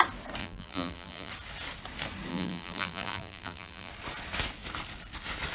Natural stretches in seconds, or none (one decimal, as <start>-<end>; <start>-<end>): 0.0-0.4; 1.3-2.3; 3.9-5.5